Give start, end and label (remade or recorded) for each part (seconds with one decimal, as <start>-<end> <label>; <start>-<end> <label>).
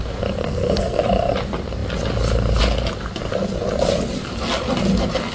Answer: 0.0-0.4 recorded; 0.4-1.0 remade; 1.0-5.3 recorded